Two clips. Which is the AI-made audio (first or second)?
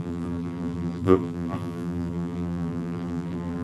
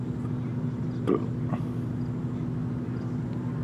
first